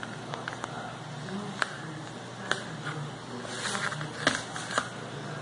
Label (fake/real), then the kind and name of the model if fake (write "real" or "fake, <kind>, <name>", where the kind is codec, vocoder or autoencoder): real